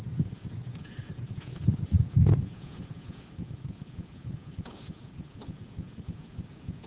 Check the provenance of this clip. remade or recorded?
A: remade